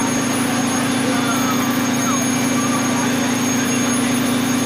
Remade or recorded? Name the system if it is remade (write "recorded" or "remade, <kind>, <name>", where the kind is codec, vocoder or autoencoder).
recorded